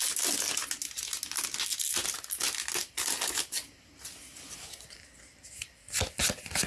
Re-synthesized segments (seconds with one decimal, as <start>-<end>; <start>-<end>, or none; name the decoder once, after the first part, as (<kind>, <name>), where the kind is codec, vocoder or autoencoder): none